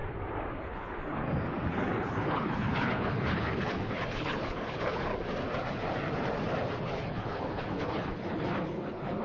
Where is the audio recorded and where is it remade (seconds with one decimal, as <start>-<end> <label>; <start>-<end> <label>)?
0.0-0.6 recorded; 0.6-1.2 remade; 1.2-1.7 recorded; 1.7-5.1 remade; 5.1-6.8 recorded; 6.8-9.2 remade